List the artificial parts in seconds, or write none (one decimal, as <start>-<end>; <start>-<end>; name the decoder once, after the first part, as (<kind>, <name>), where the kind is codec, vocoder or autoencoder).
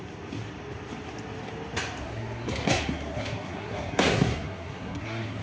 2.0-5.4 (codec, SNAC)